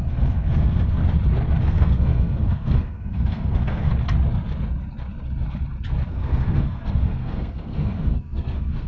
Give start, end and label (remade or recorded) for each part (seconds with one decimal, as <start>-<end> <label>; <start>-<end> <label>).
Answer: 0.0-1.0 remade; 1.0-1.6 recorded; 1.6-3.9 remade; 3.9-6.1 recorded; 6.1-8.9 remade